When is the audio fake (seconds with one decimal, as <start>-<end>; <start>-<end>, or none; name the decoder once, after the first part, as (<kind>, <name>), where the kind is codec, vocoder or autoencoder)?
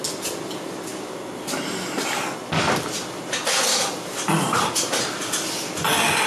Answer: none